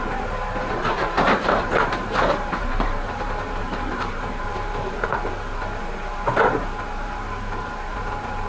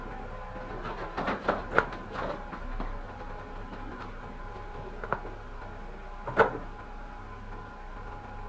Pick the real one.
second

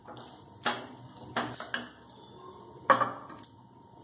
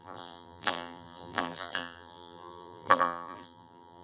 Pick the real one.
first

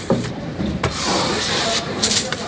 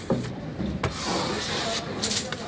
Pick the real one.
second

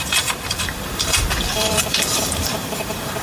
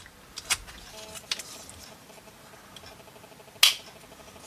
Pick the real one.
second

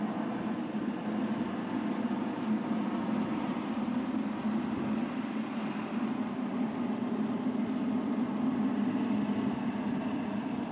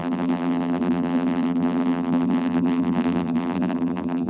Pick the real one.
first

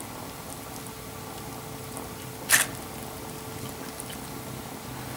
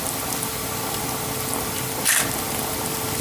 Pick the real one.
first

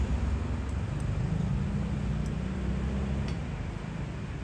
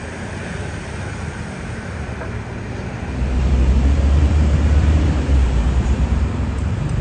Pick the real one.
first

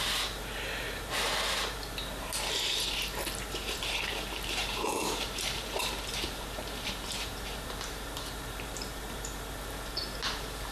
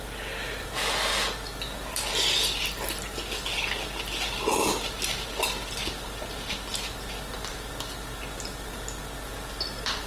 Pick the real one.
second